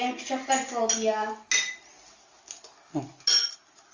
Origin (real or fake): real